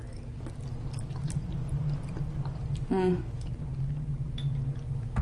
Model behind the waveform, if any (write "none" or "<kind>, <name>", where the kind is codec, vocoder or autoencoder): none